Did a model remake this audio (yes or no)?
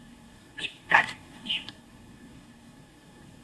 yes